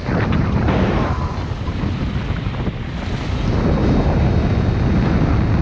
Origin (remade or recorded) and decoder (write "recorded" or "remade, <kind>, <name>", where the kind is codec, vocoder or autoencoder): recorded